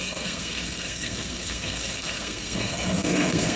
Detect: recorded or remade remade